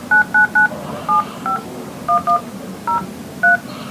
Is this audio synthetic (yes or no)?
no